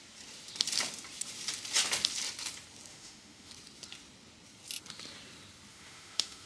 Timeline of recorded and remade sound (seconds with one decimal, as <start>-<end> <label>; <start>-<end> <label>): 0.0-2.9 recorded; 2.9-3.5 remade; 3.5-5.7 recorded; 5.7-6.5 remade